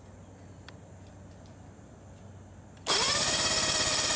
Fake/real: real